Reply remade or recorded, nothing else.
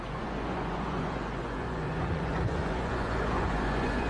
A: remade